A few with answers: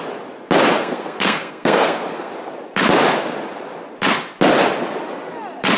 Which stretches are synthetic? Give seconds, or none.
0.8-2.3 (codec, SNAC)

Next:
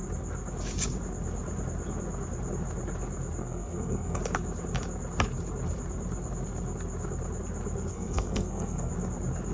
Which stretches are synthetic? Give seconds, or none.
3.4-4.2 (codec, SNAC); 7.9-8.9

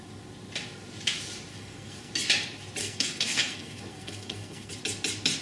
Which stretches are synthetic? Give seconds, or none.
1.5-2.1 (codec, SNAC); 2.8-4.7